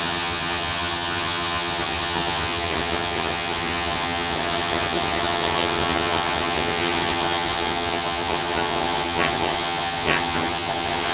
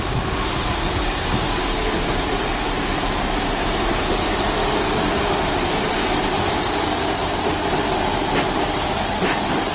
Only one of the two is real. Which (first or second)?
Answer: second